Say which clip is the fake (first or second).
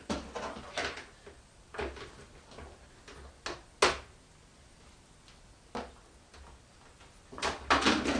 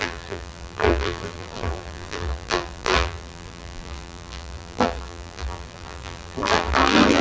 second